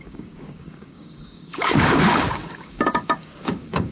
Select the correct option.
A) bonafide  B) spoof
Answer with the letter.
B